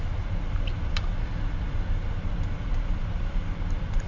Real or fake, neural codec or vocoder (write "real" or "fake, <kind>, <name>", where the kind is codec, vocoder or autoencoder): real